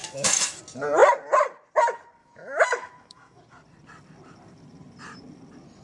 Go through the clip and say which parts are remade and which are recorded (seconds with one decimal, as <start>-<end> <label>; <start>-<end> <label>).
0.0-0.6 remade; 0.6-2.2 recorded; 2.2-3.4 remade; 3.4-5.8 recorded